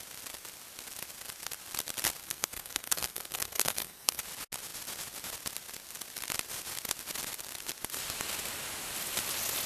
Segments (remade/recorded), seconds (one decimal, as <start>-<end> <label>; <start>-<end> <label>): 0.0-2.2 recorded; 2.2-4.2 remade; 4.2-9.7 recorded